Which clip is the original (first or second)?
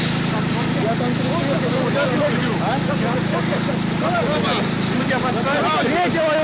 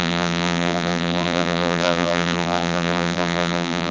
first